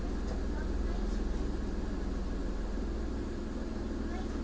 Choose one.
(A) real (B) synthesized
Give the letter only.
A